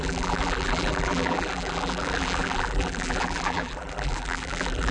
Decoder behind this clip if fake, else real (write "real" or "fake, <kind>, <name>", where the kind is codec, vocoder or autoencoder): fake, vocoder, BigVGAN v2